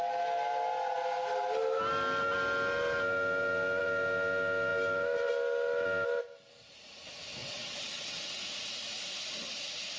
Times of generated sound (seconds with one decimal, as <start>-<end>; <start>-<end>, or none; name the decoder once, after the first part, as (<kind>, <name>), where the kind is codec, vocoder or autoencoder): 7.4-8.4 (vocoder, WaveNeXt)